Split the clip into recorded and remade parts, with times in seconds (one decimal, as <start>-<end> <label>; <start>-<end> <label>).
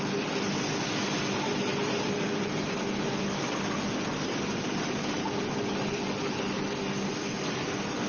0.0-8.1 recorded